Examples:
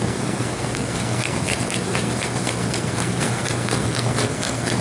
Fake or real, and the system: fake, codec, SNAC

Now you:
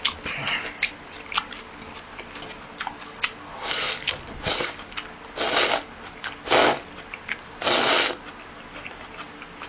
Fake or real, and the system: real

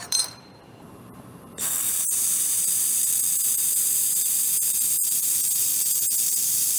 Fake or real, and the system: fake, vocoder, BigVGAN v2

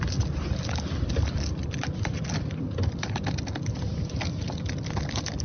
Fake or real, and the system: real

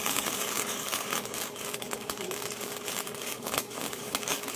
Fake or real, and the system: fake, codec, DAC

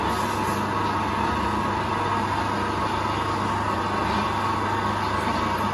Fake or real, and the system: real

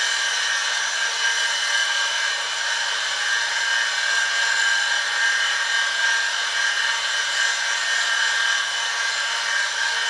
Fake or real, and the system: real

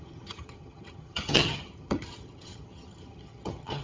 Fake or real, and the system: fake, vocoder, HiFi-GAN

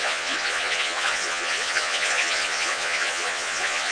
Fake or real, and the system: fake, vocoder, Vocos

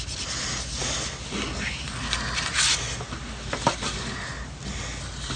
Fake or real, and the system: real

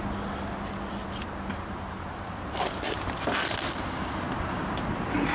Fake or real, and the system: real